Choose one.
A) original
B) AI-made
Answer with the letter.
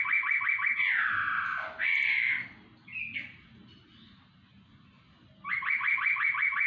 A